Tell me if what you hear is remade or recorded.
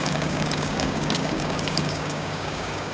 remade